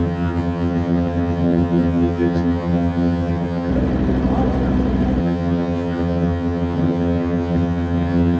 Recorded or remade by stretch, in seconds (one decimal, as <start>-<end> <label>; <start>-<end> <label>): 0.0-3.7 remade; 3.7-5.2 recorded; 5.2-8.4 remade